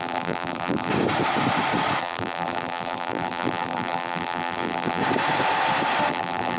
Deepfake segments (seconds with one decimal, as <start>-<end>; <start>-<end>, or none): 0.0-0.9; 2.0-5.0; 6.1-6.6